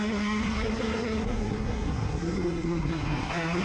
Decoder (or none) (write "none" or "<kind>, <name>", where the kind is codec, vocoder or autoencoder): codec, SNAC